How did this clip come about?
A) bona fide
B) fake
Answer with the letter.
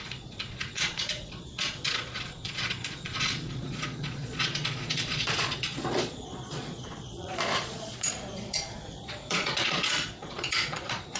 B